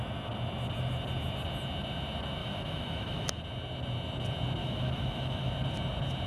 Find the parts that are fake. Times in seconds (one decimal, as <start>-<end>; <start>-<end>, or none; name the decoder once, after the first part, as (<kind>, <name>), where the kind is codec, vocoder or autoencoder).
2.4-3.4 (autoencoder, DAC-VAE); 4.6-5.5